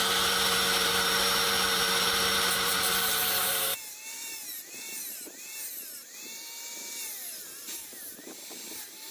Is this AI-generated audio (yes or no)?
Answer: yes